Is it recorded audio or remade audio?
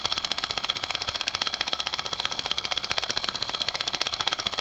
remade